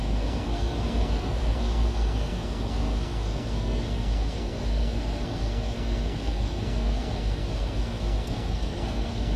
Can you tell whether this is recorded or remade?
remade